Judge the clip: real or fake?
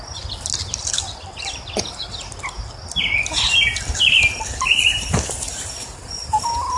real